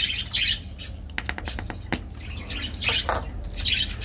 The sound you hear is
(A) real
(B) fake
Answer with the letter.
A